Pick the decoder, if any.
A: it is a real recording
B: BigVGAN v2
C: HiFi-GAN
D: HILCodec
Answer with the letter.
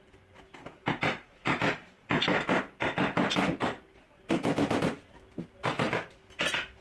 A